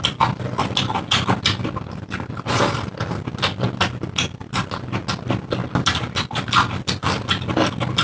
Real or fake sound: real